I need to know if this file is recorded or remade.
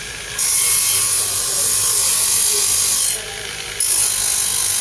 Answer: recorded